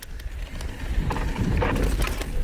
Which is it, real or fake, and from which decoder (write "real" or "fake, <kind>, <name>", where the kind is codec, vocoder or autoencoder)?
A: real